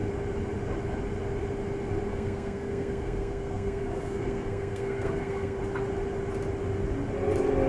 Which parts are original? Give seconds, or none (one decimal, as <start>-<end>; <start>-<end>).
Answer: 0.0-2.1; 5.6-7.7